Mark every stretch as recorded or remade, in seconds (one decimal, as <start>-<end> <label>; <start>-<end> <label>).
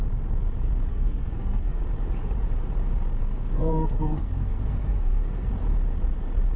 0.0-0.9 recorded; 0.9-1.8 remade; 1.8-3.2 recorded; 3.2-5.5 remade; 5.5-6.6 recorded